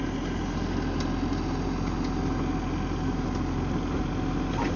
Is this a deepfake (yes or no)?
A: no